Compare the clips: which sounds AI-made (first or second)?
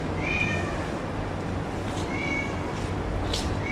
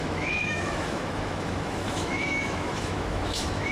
second